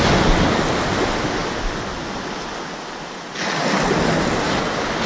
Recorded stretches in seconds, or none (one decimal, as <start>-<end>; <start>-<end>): 0.0-5.1